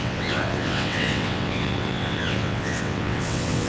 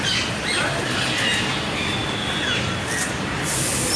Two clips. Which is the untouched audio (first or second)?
second